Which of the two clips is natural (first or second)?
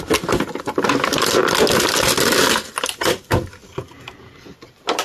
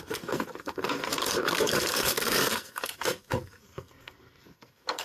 first